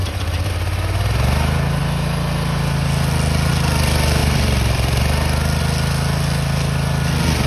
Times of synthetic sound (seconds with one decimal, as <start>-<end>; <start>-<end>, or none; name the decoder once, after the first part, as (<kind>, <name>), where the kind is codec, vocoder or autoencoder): 0.0-0.5 (vocoder, BigVGAN v2); 4.2-5.6